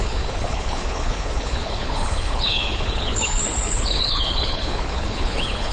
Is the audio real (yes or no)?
no